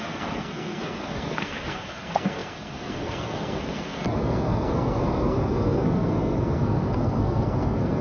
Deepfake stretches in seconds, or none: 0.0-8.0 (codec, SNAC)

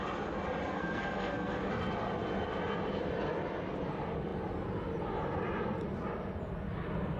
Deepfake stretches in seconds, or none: 0.7-1.7 (codec, SNAC)

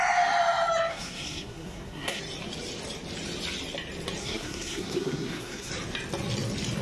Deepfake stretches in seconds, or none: 0.9-2.2 (codec, SNAC); 4.2-5.7

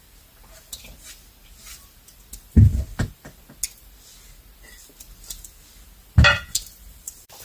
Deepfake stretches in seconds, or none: none

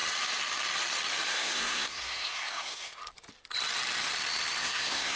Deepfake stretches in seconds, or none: 1.3-3.0 (codec, SNAC); 4.6-5.2